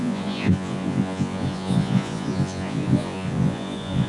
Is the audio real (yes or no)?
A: no